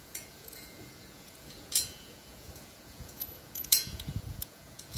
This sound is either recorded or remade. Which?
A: remade